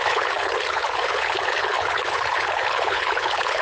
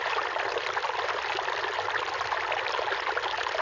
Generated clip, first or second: first